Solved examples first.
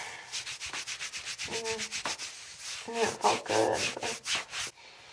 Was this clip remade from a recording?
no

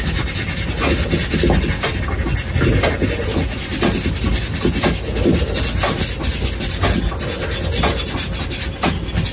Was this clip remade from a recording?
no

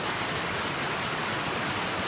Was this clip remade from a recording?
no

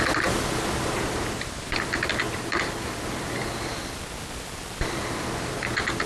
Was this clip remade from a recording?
no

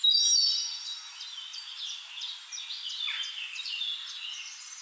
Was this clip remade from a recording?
no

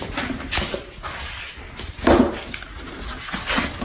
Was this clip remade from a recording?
no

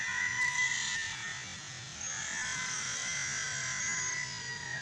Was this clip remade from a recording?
no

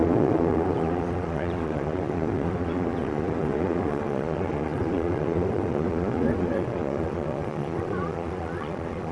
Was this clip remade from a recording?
yes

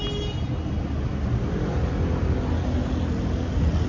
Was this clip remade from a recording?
no